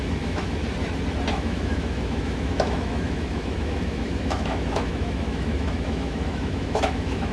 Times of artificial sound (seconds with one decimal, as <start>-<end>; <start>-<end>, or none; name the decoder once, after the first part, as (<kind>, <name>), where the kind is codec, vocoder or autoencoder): 0.0-0.6 (autoencoder, DAC-VAE); 1.3-7.3